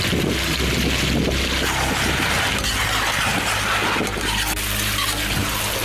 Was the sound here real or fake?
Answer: real